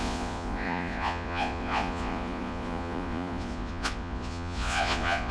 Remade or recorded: remade